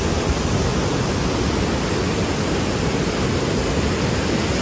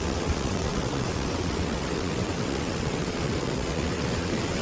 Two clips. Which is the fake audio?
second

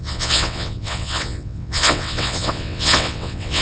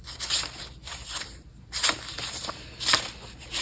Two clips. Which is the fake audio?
first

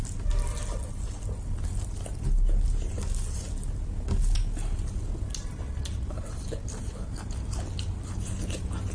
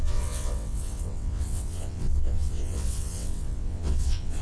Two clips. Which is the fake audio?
second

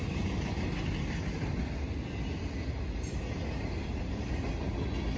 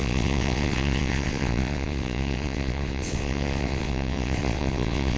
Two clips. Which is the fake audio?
second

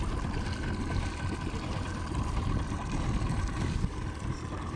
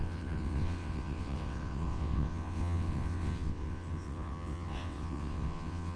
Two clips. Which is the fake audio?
second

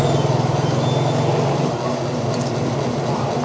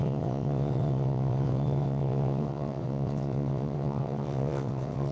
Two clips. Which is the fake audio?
second